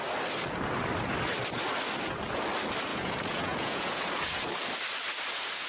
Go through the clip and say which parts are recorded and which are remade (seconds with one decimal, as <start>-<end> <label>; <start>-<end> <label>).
0.0-2.9 recorded; 2.9-4.0 remade; 4.0-5.7 recorded